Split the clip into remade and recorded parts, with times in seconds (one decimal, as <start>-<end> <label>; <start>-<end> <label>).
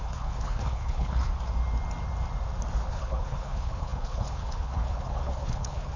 0.0-1.3 remade; 1.3-2.9 recorded; 2.9-6.0 remade